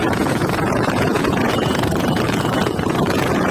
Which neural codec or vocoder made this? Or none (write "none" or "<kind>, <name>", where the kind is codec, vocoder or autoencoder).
vocoder, Vocos